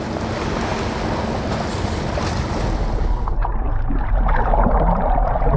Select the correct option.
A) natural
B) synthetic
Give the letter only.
A